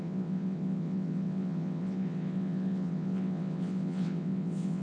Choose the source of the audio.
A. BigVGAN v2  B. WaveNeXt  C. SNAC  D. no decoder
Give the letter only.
B